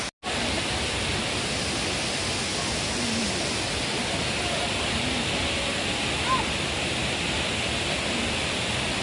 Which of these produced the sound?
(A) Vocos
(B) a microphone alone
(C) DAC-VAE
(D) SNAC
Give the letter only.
B